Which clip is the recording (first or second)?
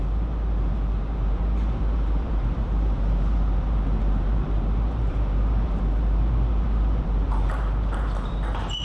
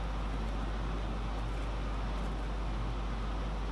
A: second